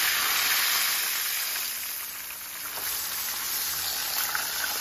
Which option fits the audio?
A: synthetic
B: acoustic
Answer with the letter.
B